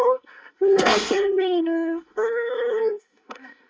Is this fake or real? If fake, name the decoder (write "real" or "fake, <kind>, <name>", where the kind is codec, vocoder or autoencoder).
fake, codec, SNAC